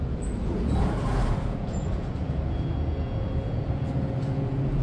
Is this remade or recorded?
remade